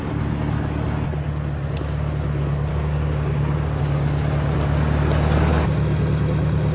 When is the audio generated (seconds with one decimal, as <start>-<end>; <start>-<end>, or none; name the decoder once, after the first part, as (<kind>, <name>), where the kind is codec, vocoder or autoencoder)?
2.7-3.8 (codec, DAC)